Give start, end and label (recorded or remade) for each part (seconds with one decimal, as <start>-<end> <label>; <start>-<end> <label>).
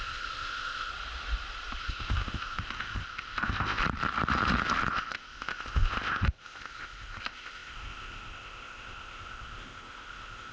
0.0-0.9 remade; 0.9-1.8 recorded; 1.8-3.8 remade; 3.8-4.9 recorded; 4.9-10.5 remade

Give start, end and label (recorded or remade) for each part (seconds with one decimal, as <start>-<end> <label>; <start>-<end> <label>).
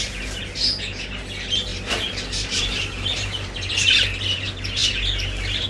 0.0-1.7 recorded; 1.7-3.7 remade; 3.7-5.7 recorded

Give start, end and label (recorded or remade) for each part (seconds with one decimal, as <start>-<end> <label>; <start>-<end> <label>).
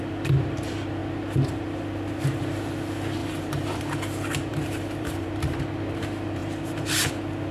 0.0-3.2 recorded; 3.2-3.8 remade; 3.8-4.5 recorded; 4.5-5.6 remade; 5.6-6.4 recorded; 6.4-7.1 remade; 7.1-7.5 recorded